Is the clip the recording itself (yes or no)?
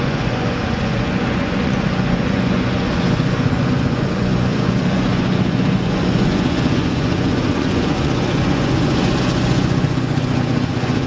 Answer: no